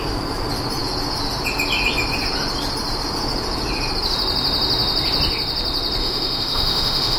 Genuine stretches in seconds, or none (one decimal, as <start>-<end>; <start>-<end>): 0.0-6.0